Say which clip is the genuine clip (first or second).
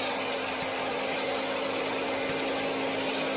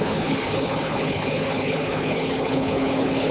first